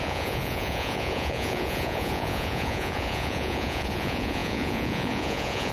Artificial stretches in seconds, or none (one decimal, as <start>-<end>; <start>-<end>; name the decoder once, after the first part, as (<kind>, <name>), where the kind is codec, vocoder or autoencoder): 0.0-5.7 (vocoder, Vocos)